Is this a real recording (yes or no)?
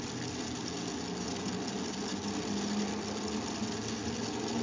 yes